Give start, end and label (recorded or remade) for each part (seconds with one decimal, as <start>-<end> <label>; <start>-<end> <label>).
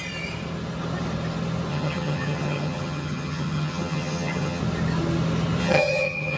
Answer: 0.0-1.7 recorded; 1.7-4.6 remade; 4.6-5.6 recorded; 5.6-6.4 remade